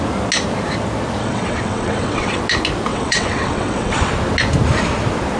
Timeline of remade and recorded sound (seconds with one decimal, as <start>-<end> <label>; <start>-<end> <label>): 0.0-1.2 recorded; 1.2-2.4 remade; 2.4-2.9 recorded; 2.9-4.1 remade; 4.1-5.4 recorded